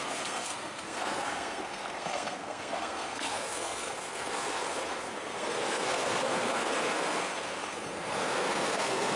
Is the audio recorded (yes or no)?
no